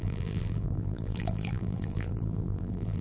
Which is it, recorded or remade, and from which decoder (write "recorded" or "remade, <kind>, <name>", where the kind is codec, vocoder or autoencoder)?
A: remade, vocoder, BigVGAN v2